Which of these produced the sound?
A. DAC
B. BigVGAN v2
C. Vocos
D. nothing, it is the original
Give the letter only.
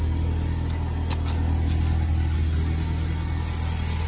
D